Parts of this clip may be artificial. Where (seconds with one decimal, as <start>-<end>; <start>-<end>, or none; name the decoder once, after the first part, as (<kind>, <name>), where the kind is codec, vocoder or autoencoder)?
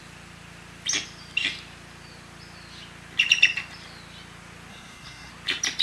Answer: 4.7-5.3 (codec, SNAC)